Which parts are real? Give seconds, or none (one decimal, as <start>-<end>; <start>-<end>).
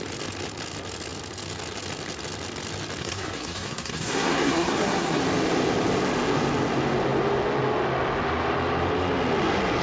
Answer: 0.0-3.0; 5.2-9.8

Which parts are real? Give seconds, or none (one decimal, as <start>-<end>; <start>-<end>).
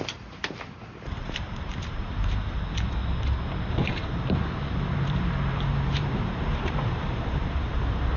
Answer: 3.0-3.7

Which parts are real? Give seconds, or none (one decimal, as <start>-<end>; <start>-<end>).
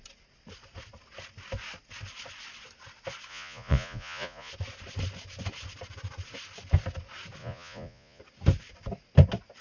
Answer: 0.0-3.3; 4.5-7.4; 8.2-9.6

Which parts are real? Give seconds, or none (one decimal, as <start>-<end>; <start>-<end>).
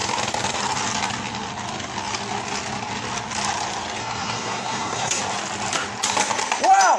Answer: 0.0-4.0; 5.2-7.0